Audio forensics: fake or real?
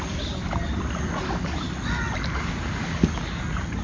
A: real